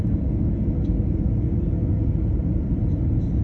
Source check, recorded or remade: recorded